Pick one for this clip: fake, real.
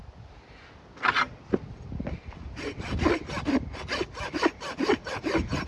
real